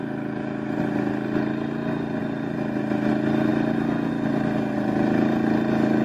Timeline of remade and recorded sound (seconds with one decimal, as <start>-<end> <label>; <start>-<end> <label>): 0.0-6.0 recorded

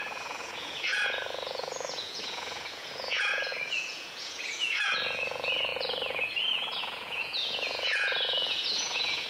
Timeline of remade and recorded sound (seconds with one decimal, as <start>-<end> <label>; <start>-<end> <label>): 0.0-9.3 remade